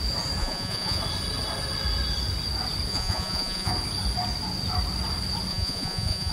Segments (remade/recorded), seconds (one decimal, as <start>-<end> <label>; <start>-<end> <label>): 0.0-0.4 recorded; 0.4-1.0 remade; 1.0-2.9 recorded; 2.9-3.7 remade; 3.7-5.5 recorded; 5.5-6.3 remade